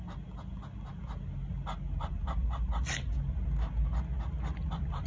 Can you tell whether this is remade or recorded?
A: recorded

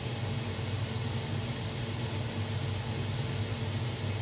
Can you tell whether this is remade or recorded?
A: recorded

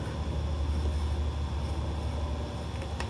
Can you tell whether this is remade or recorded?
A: recorded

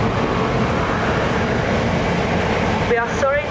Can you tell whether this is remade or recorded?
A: recorded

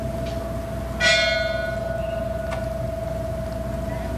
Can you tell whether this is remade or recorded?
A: recorded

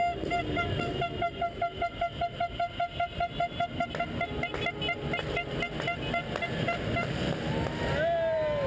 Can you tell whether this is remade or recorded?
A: recorded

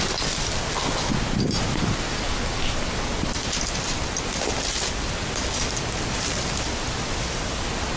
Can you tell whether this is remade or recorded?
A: recorded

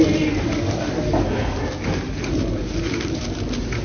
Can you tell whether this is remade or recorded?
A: recorded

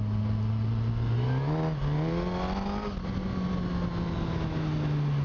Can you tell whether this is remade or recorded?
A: recorded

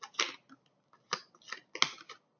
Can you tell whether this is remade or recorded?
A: recorded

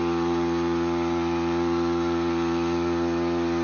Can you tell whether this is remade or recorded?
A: recorded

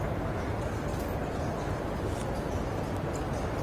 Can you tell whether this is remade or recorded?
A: recorded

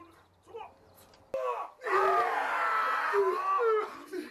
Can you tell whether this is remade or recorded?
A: recorded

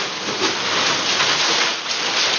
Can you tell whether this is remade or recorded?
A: recorded